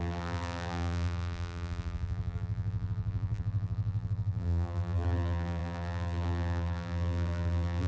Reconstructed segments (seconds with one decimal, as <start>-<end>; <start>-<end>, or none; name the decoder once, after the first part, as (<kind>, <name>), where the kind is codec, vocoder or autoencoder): 0.0-7.9 (vocoder, BigVGAN v2)